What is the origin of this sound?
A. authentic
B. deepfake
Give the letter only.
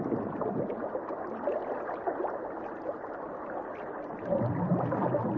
A